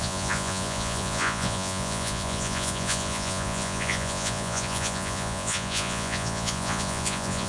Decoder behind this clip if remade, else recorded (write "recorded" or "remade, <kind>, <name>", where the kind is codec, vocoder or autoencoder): remade, vocoder, Vocos